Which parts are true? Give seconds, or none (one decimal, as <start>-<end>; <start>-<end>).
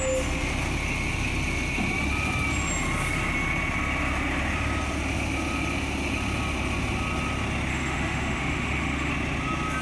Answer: 0.0-7.7; 9.1-9.8